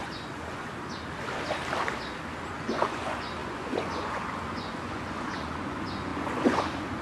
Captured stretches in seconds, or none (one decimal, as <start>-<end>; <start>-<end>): 0.7-2.5